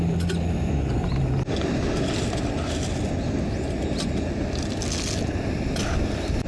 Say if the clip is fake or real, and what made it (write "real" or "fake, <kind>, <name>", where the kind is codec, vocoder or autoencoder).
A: real